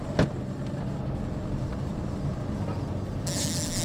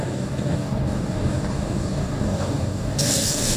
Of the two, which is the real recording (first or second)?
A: first